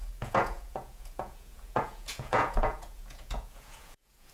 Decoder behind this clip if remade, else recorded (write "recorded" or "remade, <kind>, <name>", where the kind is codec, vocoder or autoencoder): remade, vocoder, Vocos